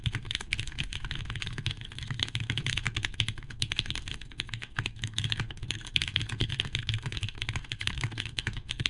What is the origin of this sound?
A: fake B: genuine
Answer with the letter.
A